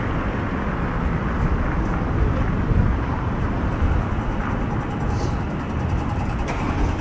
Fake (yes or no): no